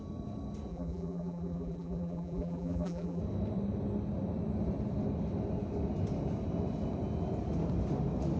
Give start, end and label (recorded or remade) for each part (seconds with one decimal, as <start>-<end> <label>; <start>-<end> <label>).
0.0-0.7 recorded; 0.7-3.2 remade; 3.2-8.4 recorded